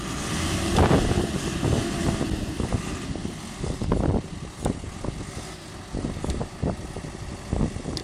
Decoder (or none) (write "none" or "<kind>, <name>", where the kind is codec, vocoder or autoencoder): none